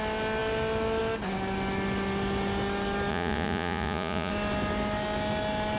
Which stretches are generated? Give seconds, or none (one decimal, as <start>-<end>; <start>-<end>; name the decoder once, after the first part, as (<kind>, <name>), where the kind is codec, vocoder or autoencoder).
3.1-4.3 (vocoder, Vocos)